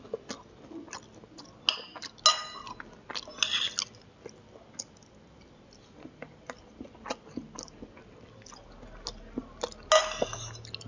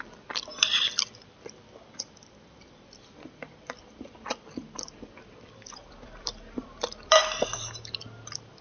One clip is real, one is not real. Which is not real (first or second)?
second